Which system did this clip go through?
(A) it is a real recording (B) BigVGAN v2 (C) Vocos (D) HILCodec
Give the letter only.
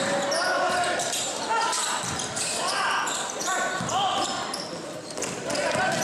B